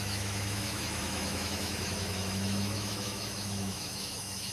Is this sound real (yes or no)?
no